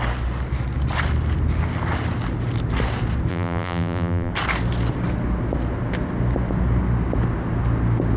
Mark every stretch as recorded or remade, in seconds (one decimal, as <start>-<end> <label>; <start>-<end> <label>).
0.0-3.3 recorded; 3.3-4.3 remade; 4.3-8.2 recorded